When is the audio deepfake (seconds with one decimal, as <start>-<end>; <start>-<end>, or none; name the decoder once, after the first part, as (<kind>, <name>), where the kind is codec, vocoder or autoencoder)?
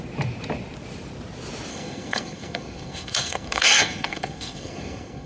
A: 1.7-5.3 (codec, SNAC)